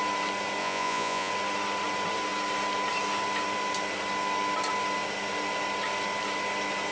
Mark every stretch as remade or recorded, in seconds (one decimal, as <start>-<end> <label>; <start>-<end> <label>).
0.0-0.6 recorded; 0.6-1.3 remade; 1.3-6.9 recorded